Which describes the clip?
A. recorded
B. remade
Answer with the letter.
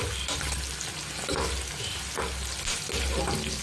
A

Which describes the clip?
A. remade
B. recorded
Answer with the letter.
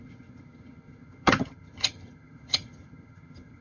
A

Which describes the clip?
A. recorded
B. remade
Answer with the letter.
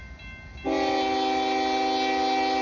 A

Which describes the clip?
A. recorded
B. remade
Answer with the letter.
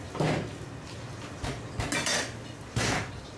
A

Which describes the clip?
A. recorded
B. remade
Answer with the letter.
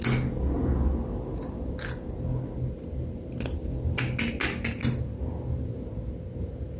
A